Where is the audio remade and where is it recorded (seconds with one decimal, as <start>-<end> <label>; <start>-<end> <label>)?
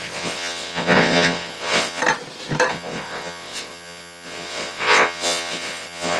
0.0-2.0 remade; 2.0-2.7 recorded; 2.7-6.2 remade